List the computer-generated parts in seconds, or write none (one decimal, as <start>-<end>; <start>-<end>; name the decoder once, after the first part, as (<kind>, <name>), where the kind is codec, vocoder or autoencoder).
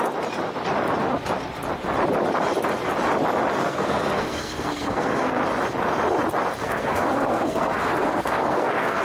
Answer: 3.6-5.4 (codec, SNAC); 6.6-9.0